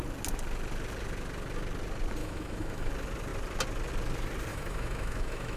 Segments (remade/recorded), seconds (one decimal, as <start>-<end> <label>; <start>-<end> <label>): 0.0-2.2 recorded; 2.2-2.9 remade; 2.9-4.5 recorded; 4.5-5.6 remade